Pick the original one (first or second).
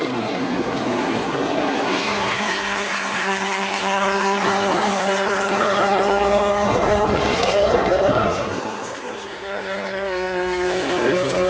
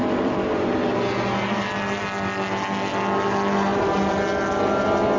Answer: second